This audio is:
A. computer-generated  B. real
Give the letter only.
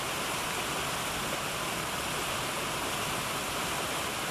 B